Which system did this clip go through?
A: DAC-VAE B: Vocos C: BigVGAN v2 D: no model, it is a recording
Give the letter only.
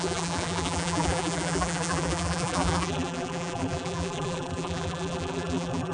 C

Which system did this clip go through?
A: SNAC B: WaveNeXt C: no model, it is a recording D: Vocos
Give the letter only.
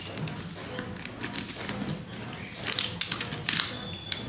C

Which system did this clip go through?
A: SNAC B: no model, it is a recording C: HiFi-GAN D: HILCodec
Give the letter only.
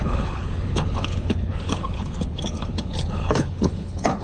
D